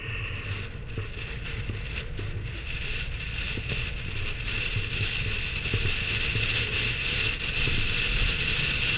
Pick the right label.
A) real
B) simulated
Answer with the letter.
A